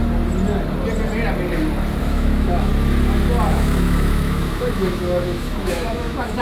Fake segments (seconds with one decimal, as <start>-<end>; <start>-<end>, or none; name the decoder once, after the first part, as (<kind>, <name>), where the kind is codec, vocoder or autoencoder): 2.0-2.7 (autoencoder, DAC-VAE); 3.5-6.4